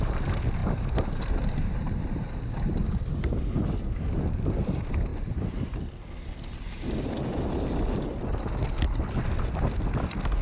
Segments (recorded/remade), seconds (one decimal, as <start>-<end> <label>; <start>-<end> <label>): 0.0-10.4 recorded